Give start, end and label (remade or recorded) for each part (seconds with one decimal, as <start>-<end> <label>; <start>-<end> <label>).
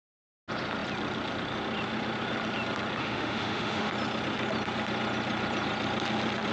0.0-3.0 recorded; 3.0-3.9 remade; 3.9-6.5 recorded